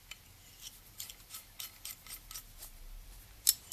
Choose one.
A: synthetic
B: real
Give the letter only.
B